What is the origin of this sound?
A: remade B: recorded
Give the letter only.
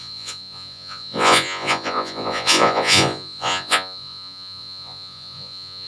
A